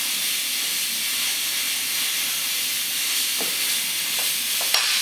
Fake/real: real